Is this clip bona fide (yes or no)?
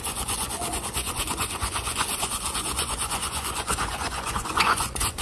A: no